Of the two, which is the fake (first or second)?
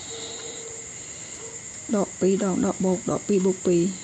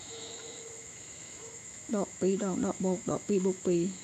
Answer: second